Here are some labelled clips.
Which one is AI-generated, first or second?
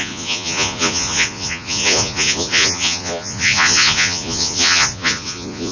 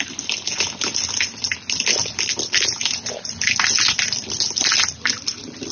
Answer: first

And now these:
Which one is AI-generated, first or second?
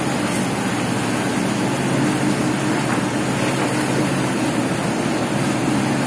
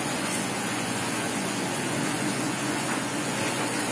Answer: second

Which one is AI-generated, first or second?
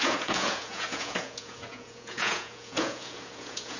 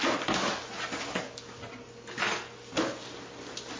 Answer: first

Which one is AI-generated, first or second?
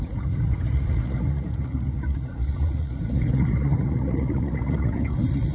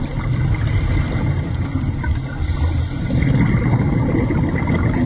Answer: first